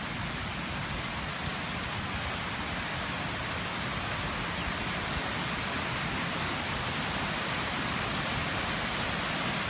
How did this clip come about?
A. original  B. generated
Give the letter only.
A